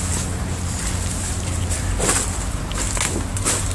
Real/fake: real